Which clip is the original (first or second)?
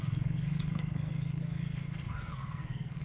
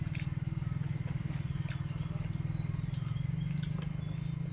second